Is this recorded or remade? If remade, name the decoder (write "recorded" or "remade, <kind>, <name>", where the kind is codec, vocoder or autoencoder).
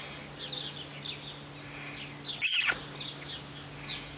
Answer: recorded